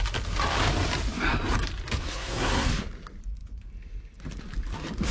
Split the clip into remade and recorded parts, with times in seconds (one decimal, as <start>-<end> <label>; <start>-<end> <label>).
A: 0.0-2.0 recorded; 2.0-2.7 remade; 2.7-5.1 recorded